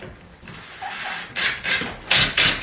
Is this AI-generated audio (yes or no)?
no